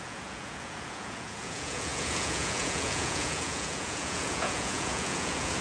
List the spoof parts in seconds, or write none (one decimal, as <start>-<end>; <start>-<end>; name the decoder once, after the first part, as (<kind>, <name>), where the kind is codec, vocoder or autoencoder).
0.0-5.6 (vocoder, Vocos)

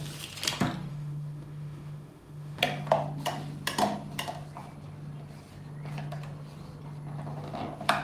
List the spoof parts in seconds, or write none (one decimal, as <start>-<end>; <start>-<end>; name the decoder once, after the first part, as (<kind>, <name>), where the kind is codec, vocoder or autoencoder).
0.9-2.6 (autoencoder, DAC-VAE)

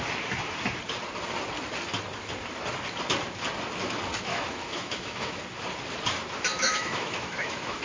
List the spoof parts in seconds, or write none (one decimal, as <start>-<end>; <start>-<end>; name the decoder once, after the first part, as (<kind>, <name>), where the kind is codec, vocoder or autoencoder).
4.3-5.4 (autoencoder, DAC-VAE); 6.5-7.8

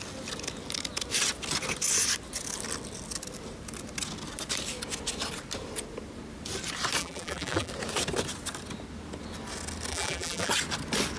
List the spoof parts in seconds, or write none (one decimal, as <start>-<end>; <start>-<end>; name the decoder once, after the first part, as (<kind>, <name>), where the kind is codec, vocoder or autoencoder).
7.0-7.7 (vocoder, BigVGAN v2); 9.9-10.5

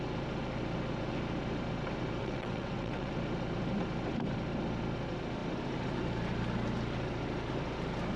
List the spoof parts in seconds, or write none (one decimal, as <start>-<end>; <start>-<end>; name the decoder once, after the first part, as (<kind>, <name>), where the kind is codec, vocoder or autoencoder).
2.2-3.1 (vocoder, WaveNeXt)

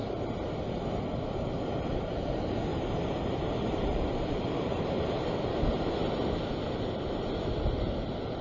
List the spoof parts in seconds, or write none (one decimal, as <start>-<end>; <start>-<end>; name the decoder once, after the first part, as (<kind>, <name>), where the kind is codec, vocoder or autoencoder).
2.7-5.2 (vocoder, BigVGAN v2)

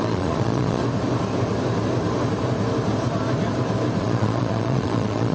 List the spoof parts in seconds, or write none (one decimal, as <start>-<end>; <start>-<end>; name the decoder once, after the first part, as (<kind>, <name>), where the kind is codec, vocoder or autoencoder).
0.0-0.8 (vocoder, Vocos); 4.0-5.3

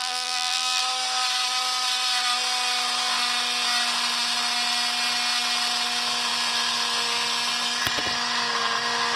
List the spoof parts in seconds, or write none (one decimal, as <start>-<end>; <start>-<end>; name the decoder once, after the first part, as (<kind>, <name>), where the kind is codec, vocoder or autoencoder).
0.0-0.8 (vocoder, BigVGAN v2)